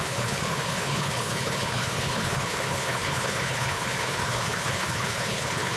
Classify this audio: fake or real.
fake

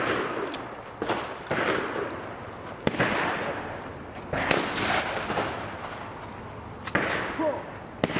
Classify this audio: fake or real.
real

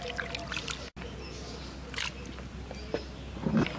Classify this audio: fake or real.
real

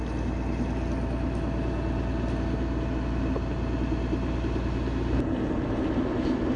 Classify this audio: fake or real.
real